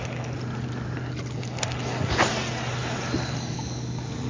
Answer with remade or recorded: recorded